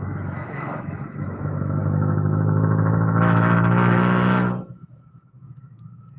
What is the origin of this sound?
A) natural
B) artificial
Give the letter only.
B